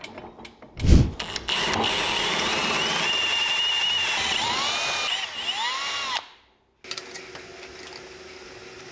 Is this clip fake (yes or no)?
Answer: no